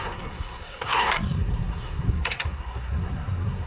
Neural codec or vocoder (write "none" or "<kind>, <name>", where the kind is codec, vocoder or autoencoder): codec, SNAC